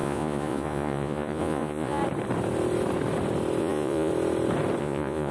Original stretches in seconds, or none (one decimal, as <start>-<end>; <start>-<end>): 2.0-3.6; 4.1-4.8